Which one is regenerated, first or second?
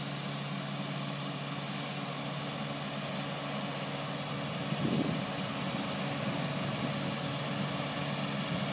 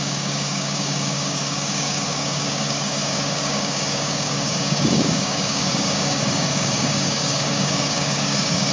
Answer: second